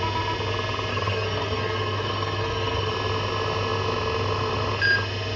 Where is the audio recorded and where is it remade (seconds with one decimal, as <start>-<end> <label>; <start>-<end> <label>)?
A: 0.0-0.9 recorded; 0.9-2.9 remade; 2.9-5.4 recorded